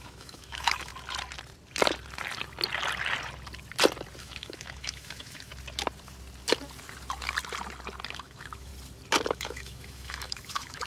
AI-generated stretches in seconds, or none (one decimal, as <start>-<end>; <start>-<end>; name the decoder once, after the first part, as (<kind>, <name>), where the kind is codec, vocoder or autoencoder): 0.0-0.9 (autoencoder, DAC-VAE); 4.2-5.5; 8.1-8.7; 9.3-10.9